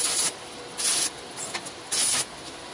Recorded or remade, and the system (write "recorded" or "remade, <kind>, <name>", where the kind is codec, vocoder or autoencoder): recorded